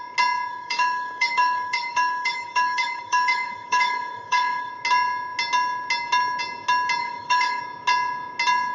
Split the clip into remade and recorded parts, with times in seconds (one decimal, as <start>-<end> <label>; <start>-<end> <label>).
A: 0.0-0.5 recorded; 0.5-4.7 remade; 4.7-7.0 recorded; 7.0-7.6 remade; 7.6-8.7 recorded